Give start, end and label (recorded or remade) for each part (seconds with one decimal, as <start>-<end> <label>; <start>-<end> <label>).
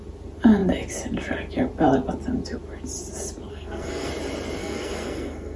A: 0.0-3.5 recorded; 3.5-4.1 remade; 4.1-4.6 recorded; 4.6-5.6 remade